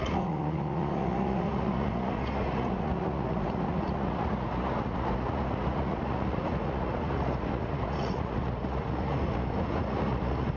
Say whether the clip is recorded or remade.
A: remade